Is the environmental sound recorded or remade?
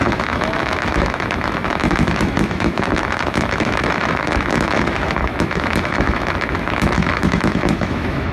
remade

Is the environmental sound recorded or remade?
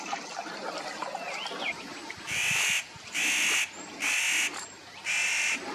recorded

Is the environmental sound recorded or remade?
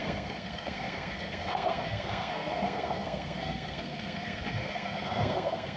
remade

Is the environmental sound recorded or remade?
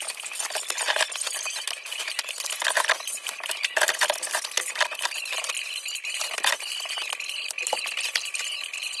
recorded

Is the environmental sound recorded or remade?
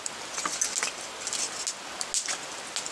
recorded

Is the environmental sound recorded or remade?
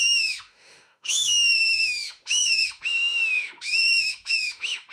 remade